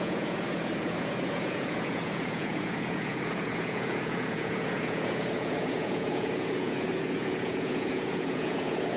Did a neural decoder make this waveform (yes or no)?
yes